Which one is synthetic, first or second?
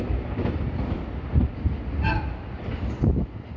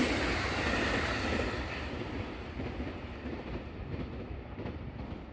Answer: second